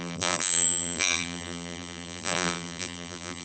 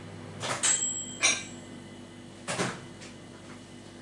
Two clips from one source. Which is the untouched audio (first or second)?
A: second